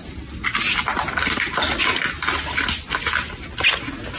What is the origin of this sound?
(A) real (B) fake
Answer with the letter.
A